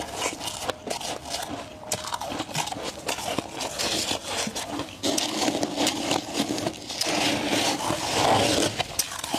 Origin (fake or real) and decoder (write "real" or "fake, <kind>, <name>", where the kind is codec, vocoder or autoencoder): real